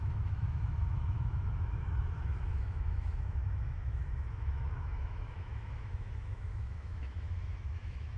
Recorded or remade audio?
remade